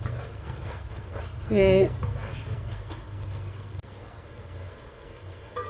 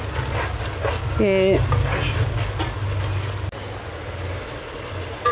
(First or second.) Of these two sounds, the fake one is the first